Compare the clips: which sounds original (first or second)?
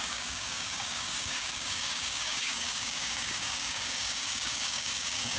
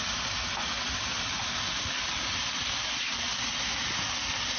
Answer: second